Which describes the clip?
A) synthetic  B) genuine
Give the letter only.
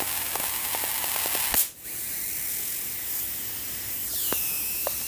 B